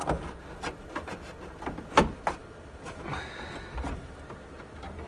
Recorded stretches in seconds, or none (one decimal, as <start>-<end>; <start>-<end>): 0.0-5.1